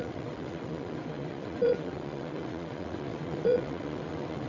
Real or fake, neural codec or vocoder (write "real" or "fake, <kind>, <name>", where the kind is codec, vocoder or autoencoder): fake, vocoder, WaveNeXt